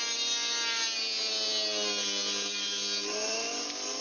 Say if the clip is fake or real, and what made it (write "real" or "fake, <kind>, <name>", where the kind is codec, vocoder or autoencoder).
real